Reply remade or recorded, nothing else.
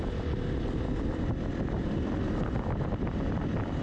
recorded